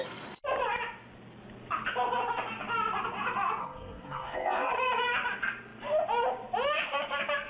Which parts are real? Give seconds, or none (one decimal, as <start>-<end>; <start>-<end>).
0.0-3.6; 4.7-7.5